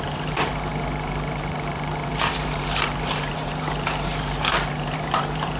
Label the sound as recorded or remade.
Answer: remade